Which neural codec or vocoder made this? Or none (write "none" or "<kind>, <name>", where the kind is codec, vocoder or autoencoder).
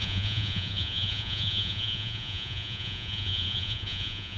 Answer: vocoder, Vocos